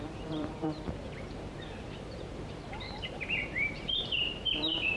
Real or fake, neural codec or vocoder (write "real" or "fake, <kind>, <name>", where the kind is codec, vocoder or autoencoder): fake, vocoder, BigVGAN v2